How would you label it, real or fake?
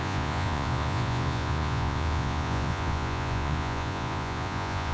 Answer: fake